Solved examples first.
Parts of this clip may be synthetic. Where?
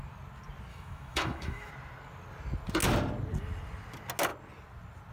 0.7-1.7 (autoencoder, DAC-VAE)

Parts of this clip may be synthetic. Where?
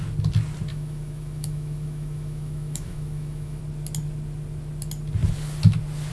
0.7-3.6 (autoencoder, DAC-VAE)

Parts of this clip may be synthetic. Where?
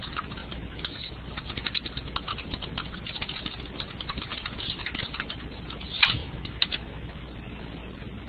0.4-1.1 (autoencoder, DAC-VAE); 6.2-7.2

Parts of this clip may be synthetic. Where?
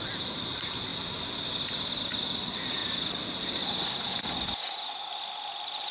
none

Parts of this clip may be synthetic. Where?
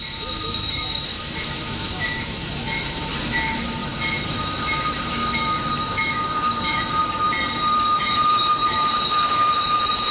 0.0-7.0 (autoencoder, DAC-VAE); 8.0-10.1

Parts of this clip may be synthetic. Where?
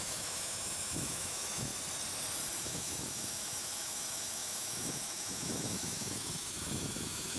0.0-1.7 (autoencoder, DAC-VAE); 2.6-7.4